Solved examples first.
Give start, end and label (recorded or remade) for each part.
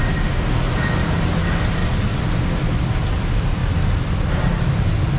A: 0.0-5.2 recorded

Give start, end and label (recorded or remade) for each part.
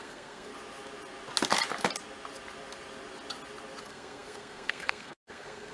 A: 0.0-0.5 remade; 0.5-3.8 recorded; 3.8-5.7 remade